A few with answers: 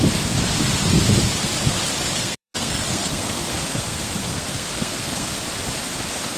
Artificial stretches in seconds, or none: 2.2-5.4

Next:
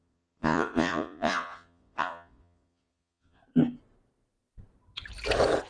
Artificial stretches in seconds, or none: 0.0-3.4

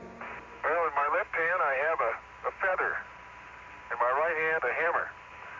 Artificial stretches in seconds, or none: 1.0-2.0

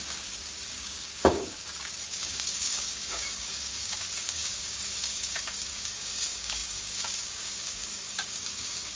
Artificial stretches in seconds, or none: 0.0-9.0

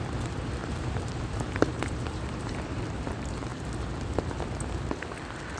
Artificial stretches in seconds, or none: 0.6-3.1

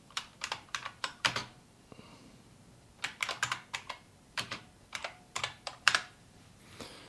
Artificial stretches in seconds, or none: 0.0-1.4; 4.3-7.1

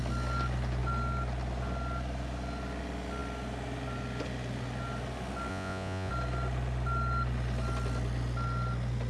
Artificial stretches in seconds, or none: 5.5-6.1

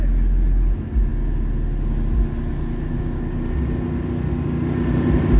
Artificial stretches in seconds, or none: none